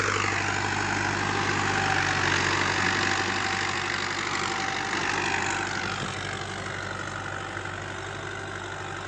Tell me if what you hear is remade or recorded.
recorded